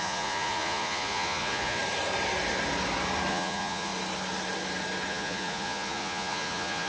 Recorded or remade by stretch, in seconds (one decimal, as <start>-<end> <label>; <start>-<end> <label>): 0.0-1.8 remade; 1.8-3.3 recorded; 3.3-3.9 remade; 3.9-5.1 recorded; 5.1-6.9 remade